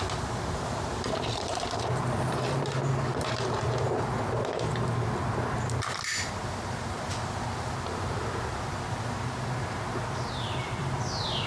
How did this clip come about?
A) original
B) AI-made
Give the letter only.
B